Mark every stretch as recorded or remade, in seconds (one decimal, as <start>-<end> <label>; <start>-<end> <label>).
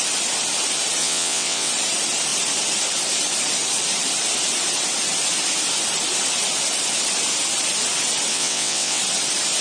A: 0.0-1.0 recorded; 1.0-1.7 remade; 1.7-8.3 recorded; 8.3-9.0 remade; 9.0-9.6 recorded